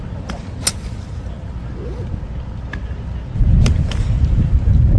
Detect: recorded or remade recorded